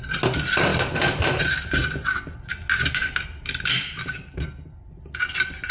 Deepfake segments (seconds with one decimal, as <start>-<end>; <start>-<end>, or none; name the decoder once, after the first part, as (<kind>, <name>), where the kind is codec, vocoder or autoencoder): none